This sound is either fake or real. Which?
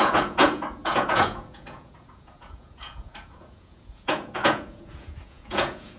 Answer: fake